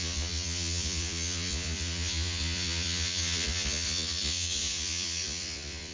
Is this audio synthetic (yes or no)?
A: yes